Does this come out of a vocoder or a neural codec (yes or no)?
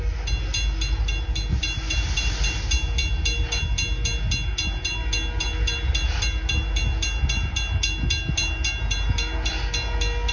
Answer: no